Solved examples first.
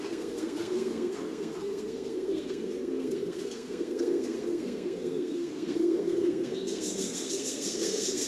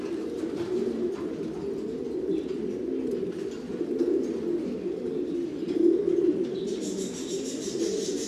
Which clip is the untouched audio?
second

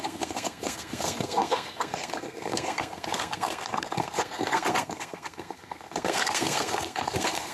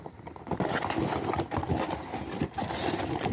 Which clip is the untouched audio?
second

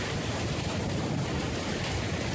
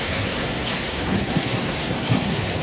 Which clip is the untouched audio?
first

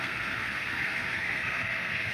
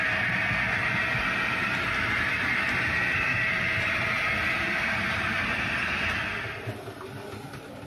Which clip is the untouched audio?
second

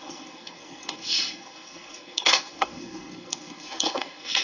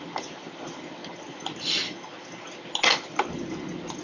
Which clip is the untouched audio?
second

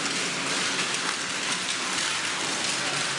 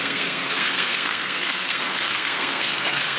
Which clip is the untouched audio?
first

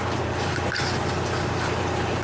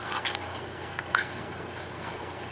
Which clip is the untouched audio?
first